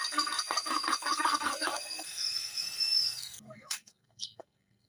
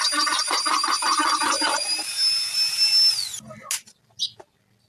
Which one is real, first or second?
second